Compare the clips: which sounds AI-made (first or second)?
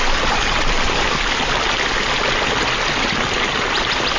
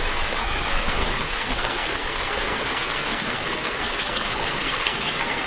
second